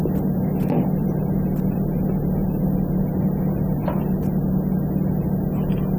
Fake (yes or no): no